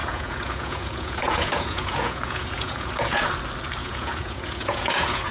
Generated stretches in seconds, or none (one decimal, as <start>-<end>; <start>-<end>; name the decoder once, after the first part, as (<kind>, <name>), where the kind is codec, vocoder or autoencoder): 0.0-3.2 (vocoder, Vocos); 3.8-5.3